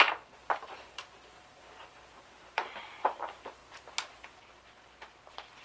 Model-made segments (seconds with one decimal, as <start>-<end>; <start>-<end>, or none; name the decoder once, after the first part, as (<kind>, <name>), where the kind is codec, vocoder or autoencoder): 0.0-3.6 (vocoder, BigVGAN v2)